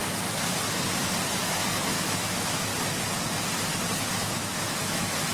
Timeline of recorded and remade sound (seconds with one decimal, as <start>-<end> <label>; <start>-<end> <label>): 0.0-1.4 recorded; 1.4-2.7 remade; 2.7-4.2 recorded; 4.2-5.3 remade